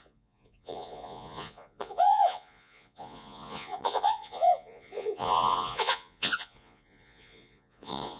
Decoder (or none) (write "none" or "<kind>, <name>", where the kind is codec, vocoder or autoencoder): vocoder, Vocos